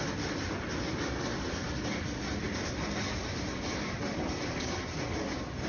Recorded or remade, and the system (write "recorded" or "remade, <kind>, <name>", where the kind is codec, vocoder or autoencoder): recorded